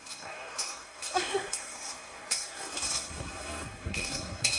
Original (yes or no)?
no